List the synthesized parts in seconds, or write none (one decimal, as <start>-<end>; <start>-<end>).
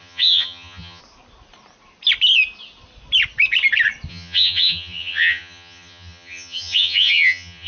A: 0.0-1.0; 4.1-7.7